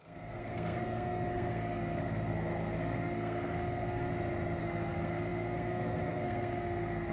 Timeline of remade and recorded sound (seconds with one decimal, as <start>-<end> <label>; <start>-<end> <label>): 0.0-4.1 remade; 4.1-4.6 recorded; 4.6-7.1 remade